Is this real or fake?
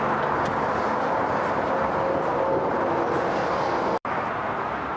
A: real